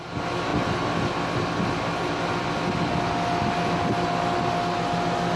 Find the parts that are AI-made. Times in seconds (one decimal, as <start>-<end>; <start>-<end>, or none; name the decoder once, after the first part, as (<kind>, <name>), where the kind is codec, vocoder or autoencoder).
none